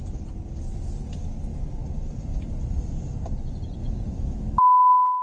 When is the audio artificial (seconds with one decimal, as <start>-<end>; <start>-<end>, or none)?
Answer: 3.8-4.6